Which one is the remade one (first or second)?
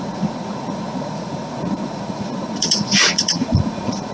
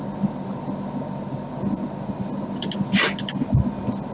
first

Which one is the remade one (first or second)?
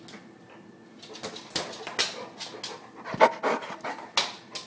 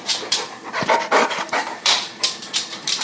second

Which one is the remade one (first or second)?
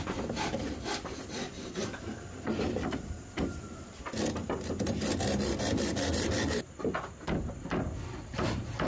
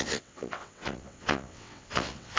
second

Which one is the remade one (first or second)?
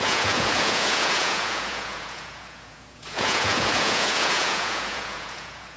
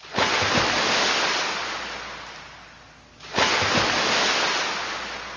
first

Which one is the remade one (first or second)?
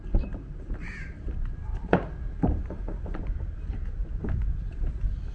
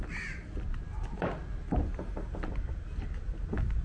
first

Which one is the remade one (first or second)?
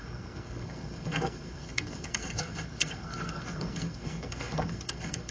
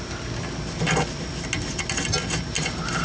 first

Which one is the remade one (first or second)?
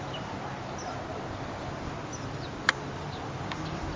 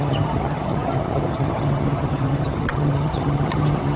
second